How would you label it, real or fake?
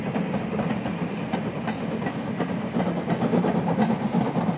real